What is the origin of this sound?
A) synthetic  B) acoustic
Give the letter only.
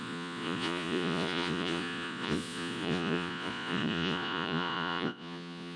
A